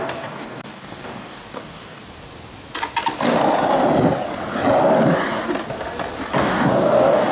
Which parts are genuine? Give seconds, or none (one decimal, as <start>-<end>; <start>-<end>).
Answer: 2.0-6.4